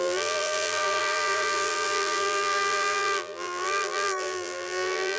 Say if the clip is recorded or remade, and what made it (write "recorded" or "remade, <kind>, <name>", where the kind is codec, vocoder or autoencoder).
remade, vocoder, BigVGAN v2